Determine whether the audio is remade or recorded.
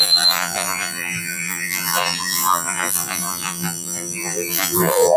remade